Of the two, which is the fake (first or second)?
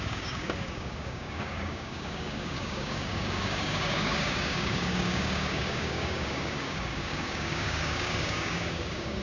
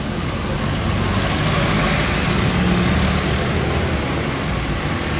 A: first